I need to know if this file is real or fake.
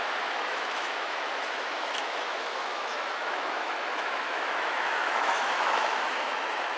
fake